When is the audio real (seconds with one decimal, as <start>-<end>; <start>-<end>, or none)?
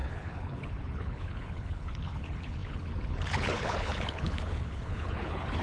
none